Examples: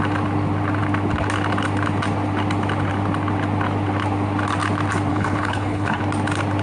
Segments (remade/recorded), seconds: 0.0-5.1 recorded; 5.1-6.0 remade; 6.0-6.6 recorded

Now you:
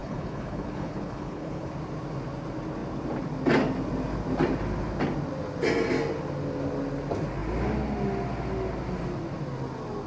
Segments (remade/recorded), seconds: 0.0-1.7 remade; 1.7-10.1 recorded

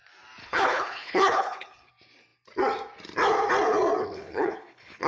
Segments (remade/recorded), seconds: 0.0-0.4 recorded; 0.4-1.9 remade; 1.9-4.0 recorded; 4.0-5.1 remade

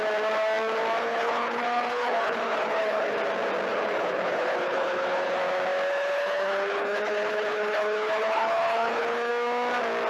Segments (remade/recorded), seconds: 0.0-1.0 recorded; 1.0-3.2 remade; 3.2-3.7 recorded; 3.7-5.4 remade; 5.4-5.9 recorded; 5.9-9.3 remade; 9.3-10.1 recorded

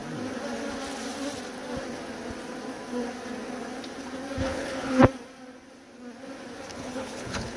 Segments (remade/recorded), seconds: 0.0-4.4 recorded; 4.4-5.0 remade; 5.0-6.7 recorded; 6.7-7.6 remade

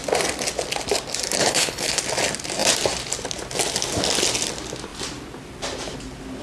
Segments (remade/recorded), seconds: 0.0-1.4 recorded; 1.4-2.0 remade; 2.0-6.4 recorded

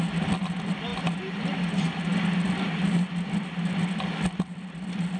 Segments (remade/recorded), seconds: 0.0-5.2 recorded